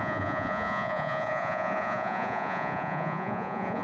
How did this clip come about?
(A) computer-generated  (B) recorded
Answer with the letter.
A